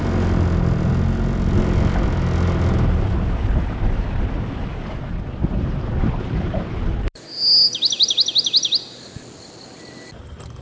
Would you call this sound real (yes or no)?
yes